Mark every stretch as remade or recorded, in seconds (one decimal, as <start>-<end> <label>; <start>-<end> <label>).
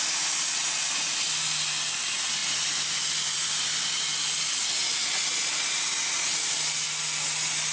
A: 0.0-7.7 recorded